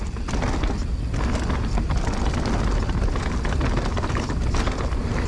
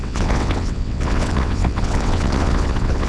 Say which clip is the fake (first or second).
second